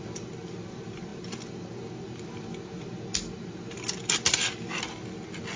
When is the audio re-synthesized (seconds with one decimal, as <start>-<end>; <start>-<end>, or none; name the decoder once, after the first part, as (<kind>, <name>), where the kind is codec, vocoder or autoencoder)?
none